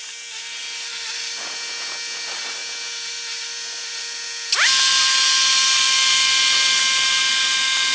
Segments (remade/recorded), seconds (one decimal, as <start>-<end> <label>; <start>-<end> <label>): 0.0-7.9 recorded